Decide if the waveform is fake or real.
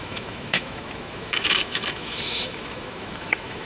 fake